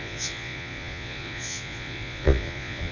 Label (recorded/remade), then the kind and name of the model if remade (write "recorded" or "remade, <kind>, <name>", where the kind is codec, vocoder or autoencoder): remade, vocoder, Vocos